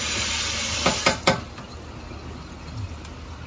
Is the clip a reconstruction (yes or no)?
no